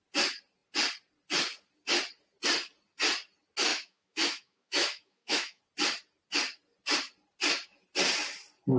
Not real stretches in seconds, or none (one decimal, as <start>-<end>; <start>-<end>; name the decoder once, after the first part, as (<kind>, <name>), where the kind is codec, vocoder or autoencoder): 3.7-5.6 (autoencoder, DAC-VAE)